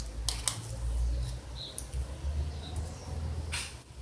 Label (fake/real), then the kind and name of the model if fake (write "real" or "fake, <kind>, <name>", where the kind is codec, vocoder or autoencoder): real